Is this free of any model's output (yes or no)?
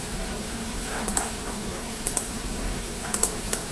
no